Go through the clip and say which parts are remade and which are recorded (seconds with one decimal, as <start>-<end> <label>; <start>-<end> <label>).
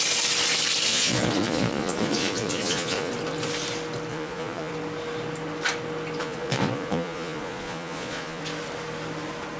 0.0-0.9 recorded; 0.9-3.1 remade; 3.1-4.1 recorded; 4.1-4.7 remade; 4.7-6.2 recorded; 6.2-8.4 remade; 8.4-9.6 recorded